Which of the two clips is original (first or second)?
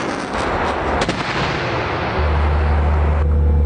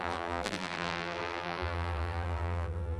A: first